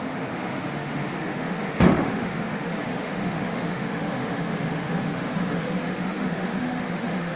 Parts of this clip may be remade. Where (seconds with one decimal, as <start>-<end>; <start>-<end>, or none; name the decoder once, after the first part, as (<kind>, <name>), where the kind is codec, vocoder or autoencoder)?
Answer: 0.0-7.4 (autoencoder, DAC-VAE)